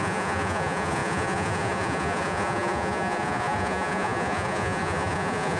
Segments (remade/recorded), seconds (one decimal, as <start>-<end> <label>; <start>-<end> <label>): 0.0-5.6 remade